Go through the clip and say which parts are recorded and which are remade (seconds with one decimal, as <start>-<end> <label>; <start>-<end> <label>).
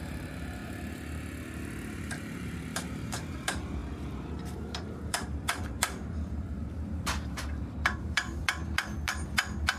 0.0-0.6 remade; 0.6-2.0 recorded; 2.0-8.4 remade; 8.4-9.8 recorded